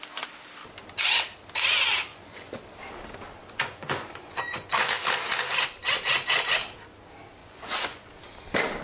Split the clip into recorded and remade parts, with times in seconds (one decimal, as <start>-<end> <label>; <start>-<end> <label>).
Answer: 0.0-2.1 recorded; 2.1-2.7 remade; 2.7-3.4 recorded; 3.4-4.9 remade; 4.9-7.4 recorded; 7.4-8.1 remade; 8.1-8.8 recorded